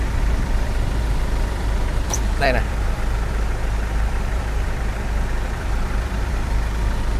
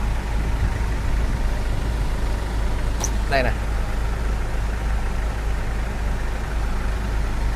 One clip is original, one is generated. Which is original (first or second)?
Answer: second